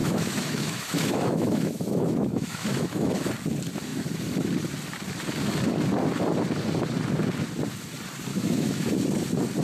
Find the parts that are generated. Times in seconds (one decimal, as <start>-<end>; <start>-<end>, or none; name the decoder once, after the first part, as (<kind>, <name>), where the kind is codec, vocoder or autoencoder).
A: 0.0-3.1 (autoencoder, DAC-VAE); 8.3-8.9